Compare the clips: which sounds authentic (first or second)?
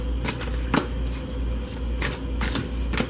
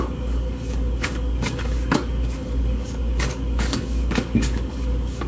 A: first